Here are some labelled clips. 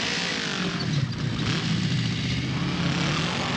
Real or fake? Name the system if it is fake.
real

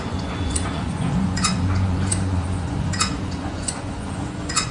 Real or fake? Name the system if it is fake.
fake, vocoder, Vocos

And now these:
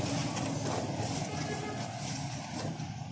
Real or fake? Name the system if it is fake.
real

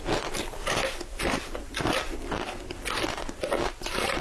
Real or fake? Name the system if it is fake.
real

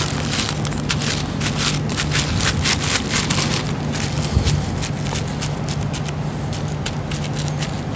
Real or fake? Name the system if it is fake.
real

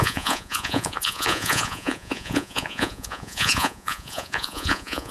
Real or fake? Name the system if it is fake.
fake, vocoder, Vocos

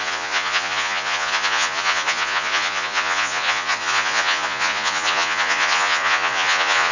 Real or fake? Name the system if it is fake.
fake, vocoder, Vocos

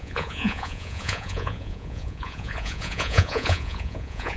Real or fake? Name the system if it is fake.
fake, vocoder, Vocos